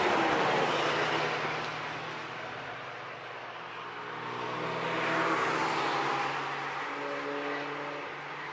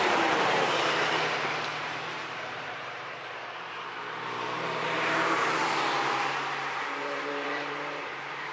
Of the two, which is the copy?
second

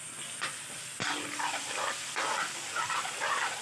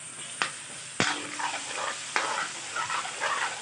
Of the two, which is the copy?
first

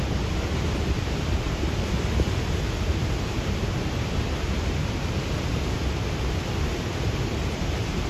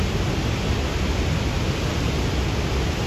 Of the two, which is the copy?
first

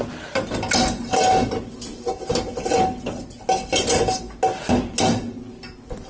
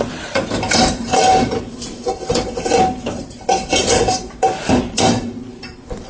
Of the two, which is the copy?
second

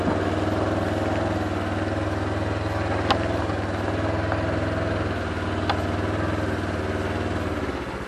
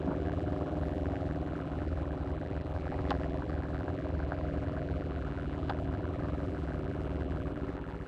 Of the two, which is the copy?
second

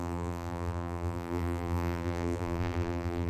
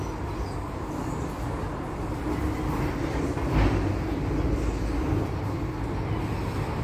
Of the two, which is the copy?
first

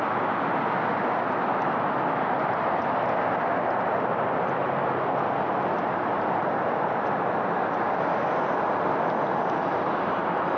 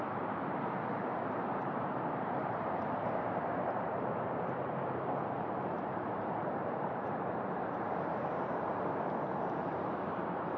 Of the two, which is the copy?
second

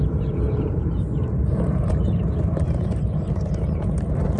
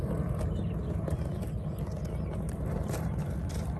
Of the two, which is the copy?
first